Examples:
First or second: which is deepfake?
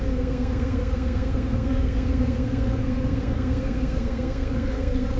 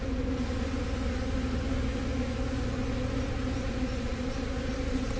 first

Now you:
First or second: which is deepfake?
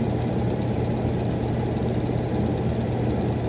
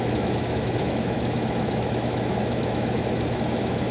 second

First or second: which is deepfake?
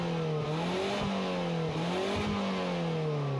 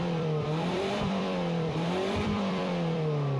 second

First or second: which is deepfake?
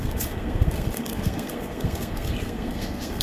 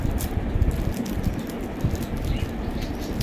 first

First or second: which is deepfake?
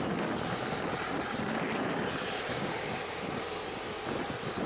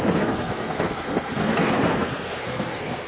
second